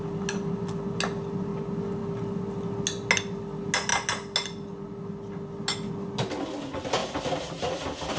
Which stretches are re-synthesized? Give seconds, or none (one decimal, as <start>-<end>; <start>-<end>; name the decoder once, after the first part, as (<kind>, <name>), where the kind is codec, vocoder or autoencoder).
7.0-8.2 (vocoder, BigVGAN v2)